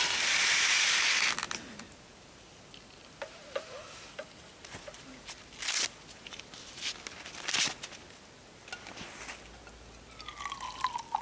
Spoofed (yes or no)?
no